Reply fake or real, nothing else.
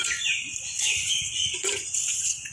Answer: fake